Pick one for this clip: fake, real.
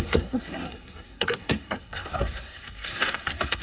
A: fake